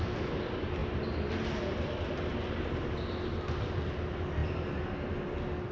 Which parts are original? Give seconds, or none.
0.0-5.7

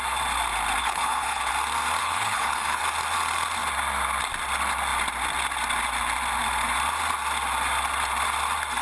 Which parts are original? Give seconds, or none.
0.0-0.8; 1.5-2.0; 2.8-8.8

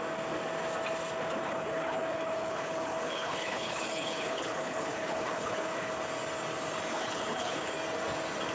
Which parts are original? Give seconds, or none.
0.0-1.4; 5.9-6.9; 7.7-8.5

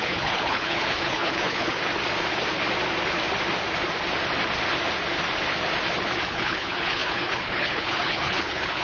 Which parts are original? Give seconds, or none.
1.9-6.3

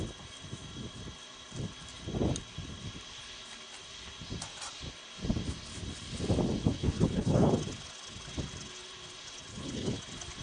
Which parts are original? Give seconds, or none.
0.0-6.7; 7.5-9.5; 10.0-10.4

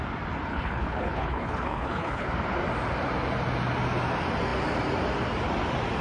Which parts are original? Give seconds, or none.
0.0-0.5; 2.3-6.0